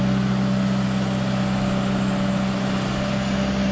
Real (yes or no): yes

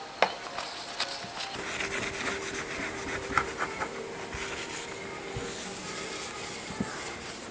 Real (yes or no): yes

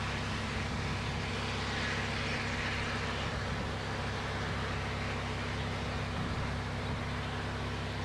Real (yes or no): yes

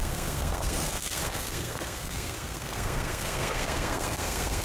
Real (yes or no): no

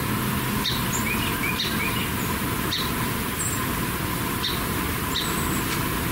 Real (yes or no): yes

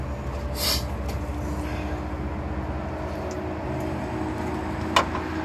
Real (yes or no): yes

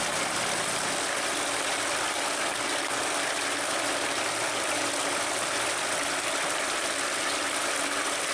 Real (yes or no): yes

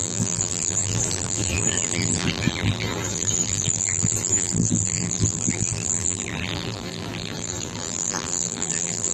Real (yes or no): no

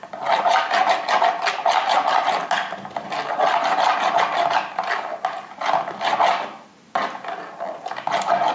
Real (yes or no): yes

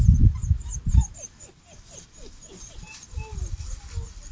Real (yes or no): yes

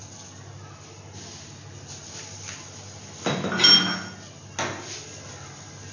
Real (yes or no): yes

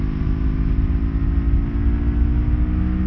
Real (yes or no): yes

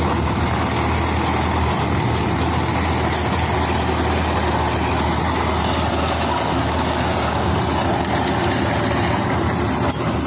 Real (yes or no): yes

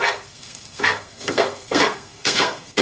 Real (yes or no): no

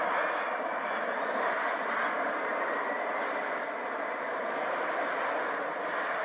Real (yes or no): yes